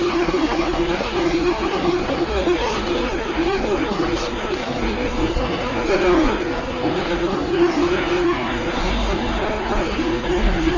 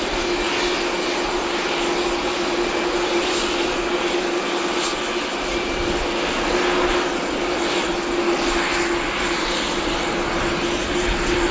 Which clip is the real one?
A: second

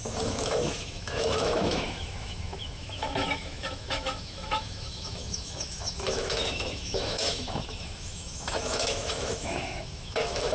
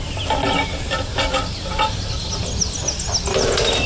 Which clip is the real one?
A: second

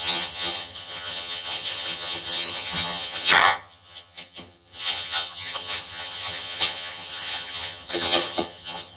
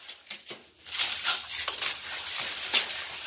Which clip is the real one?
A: second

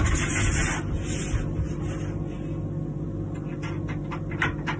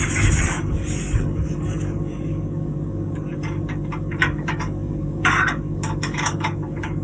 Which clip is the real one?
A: first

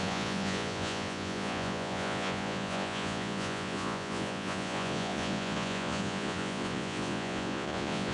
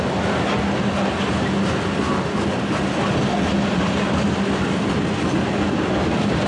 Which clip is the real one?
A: second